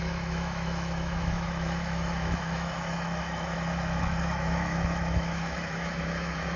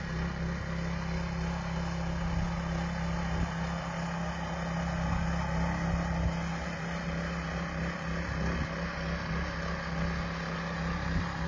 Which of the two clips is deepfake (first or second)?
first